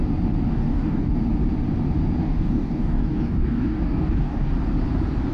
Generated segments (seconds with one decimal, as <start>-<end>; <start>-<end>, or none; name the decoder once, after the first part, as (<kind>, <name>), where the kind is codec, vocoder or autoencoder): 0.5-1.1 (codec, DAC); 2.2-4.5